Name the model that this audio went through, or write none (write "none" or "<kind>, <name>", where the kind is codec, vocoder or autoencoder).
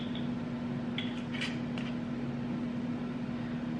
none